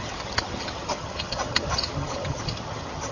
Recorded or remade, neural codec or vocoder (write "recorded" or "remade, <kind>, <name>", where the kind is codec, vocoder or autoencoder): remade, vocoder, HiFi-GAN